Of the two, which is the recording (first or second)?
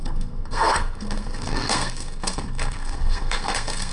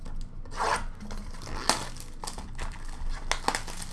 second